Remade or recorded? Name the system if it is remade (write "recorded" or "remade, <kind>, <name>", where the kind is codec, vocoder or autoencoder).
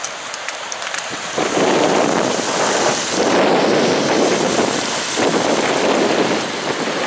recorded